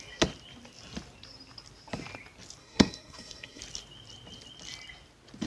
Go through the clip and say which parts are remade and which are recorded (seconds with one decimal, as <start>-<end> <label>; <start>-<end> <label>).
0.0-2.6 recorded; 2.6-3.6 remade; 3.6-5.5 recorded